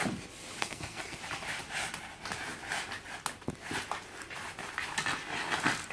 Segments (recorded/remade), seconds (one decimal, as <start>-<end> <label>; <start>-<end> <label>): 0.0-0.6 recorded; 0.6-1.2 remade; 1.2-5.9 recorded